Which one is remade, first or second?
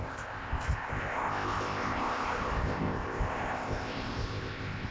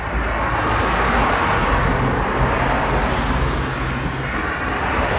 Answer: first